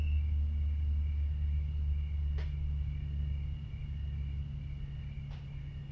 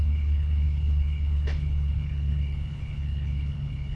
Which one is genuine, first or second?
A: first